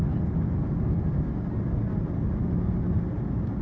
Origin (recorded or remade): recorded